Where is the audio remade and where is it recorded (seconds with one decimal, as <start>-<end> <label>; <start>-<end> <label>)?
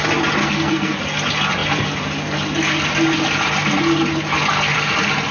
0.0-0.4 recorded; 0.4-1.0 remade; 1.0-5.3 recorded